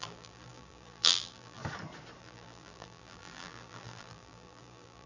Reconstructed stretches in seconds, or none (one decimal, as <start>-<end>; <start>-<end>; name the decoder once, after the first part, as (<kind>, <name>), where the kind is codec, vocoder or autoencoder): 0.0-1.6 (vocoder, BigVGAN v2); 2.2-5.1